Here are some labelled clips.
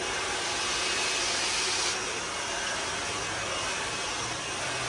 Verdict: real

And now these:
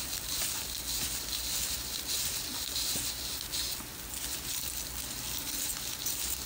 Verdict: real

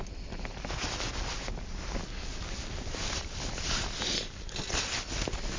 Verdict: real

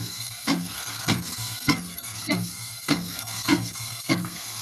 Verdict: fake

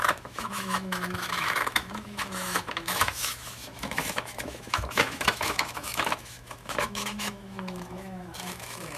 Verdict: fake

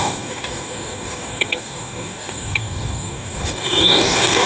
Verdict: fake